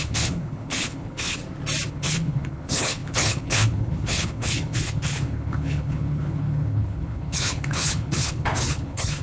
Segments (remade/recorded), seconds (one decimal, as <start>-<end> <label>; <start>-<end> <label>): 0.0-1.4 remade; 1.4-1.9 recorded; 1.9-9.2 remade